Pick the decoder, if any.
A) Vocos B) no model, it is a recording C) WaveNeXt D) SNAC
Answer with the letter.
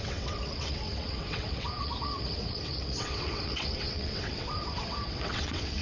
C